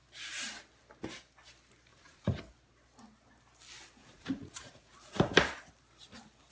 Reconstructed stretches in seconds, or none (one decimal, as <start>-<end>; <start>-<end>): 1.9-2.4; 4.0-4.9